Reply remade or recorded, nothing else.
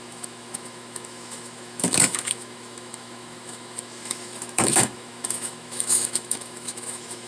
remade